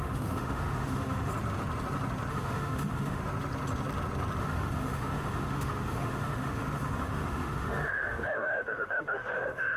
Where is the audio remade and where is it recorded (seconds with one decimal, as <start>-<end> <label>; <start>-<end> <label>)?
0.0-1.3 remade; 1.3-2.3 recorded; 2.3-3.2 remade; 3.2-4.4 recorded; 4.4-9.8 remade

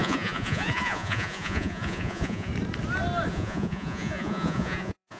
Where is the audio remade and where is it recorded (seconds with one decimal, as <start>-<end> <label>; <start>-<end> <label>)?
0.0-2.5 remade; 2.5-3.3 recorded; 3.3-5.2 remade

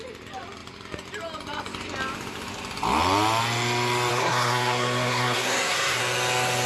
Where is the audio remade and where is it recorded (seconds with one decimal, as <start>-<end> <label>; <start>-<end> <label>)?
0.0-4.1 recorded; 4.1-6.0 remade; 6.0-6.7 recorded

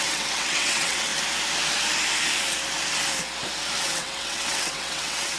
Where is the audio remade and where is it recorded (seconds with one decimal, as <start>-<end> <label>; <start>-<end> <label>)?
0.0-1.1 remade; 1.1-3.8 recorded; 3.8-5.4 remade

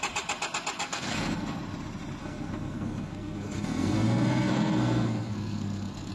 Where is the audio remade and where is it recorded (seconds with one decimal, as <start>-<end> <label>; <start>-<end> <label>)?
0.0-0.8 recorded; 0.8-1.6 remade; 1.6-2.2 recorded; 2.2-6.1 remade

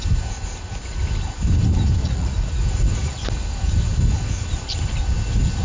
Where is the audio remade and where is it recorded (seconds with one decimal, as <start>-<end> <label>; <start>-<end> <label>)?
0.0-2.0 recorded; 2.0-2.5 remade; 2.5-5.6 recorded

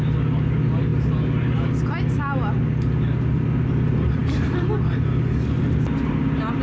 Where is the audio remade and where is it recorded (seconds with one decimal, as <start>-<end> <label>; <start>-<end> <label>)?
0.0-6.6 recorded